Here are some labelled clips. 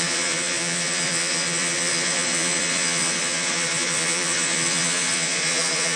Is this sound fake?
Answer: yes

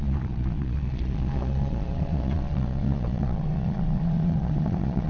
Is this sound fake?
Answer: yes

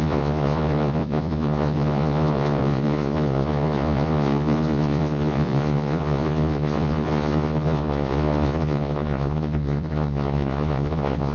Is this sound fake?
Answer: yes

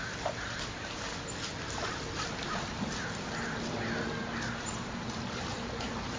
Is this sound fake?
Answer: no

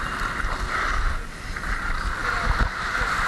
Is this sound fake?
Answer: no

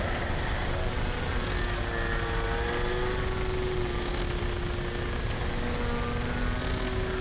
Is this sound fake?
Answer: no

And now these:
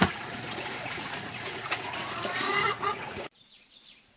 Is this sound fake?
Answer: yes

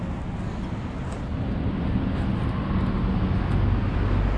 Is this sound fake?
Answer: no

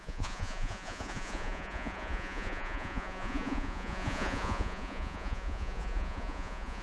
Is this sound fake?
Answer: yes